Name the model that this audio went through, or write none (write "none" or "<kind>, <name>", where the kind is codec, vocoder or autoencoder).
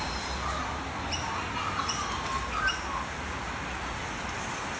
none